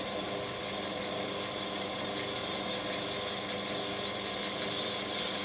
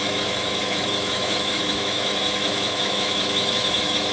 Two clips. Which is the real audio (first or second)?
first